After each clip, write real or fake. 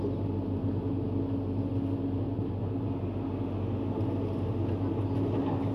real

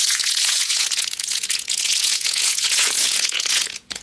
fake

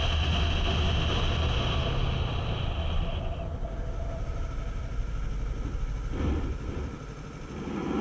real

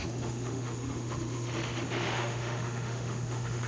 fake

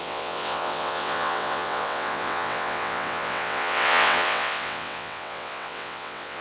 fake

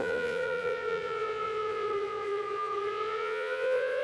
fake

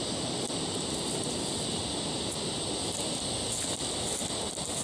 real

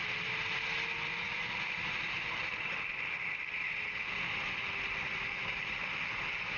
real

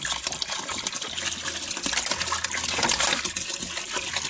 real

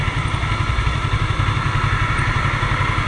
real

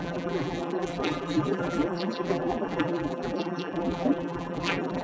fake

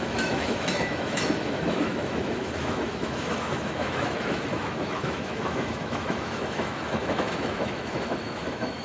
fake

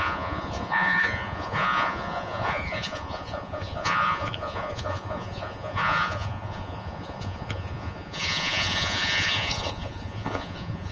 fake